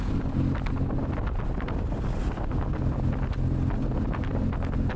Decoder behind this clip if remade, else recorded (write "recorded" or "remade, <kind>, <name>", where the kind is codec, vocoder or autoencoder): recorded